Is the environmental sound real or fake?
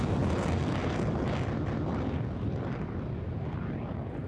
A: real